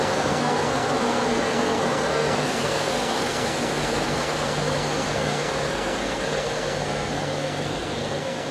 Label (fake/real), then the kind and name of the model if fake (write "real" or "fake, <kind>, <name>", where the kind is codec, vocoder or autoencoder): fake, codec, SNAC